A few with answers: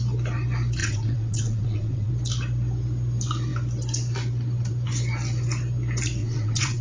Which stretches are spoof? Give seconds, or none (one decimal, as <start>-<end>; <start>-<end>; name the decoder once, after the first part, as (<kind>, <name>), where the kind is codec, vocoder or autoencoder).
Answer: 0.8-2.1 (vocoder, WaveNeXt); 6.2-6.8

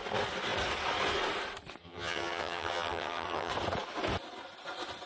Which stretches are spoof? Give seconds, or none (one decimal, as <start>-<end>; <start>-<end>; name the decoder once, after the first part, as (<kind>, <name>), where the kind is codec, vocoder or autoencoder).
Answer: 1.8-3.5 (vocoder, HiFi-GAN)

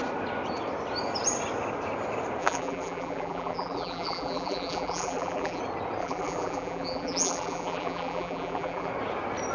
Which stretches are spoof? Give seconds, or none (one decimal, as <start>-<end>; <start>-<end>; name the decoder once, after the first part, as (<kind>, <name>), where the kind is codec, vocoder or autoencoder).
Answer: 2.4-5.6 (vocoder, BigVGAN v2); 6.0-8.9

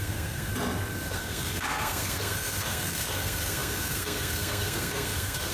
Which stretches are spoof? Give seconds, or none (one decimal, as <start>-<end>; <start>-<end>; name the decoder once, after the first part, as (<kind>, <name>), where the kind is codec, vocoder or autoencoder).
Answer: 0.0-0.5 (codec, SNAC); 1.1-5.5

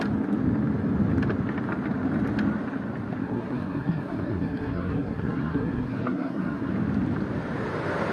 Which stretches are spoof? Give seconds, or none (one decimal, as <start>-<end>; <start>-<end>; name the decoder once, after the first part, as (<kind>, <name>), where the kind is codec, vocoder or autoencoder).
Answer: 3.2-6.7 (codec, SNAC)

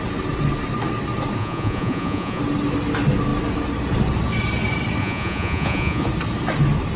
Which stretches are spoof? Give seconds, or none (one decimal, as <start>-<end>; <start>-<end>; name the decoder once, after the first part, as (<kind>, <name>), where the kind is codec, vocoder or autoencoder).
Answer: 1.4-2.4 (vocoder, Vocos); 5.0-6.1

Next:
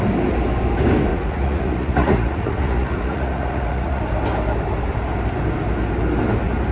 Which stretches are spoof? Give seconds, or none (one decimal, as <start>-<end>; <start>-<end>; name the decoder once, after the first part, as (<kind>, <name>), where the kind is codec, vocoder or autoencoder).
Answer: 1.1-4.0 (vocoder, Vocos)

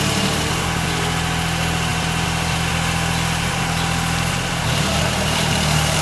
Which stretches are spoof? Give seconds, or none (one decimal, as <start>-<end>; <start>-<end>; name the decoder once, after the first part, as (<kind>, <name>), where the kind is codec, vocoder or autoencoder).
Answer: none